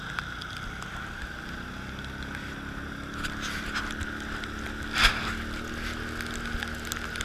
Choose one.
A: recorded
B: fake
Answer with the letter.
A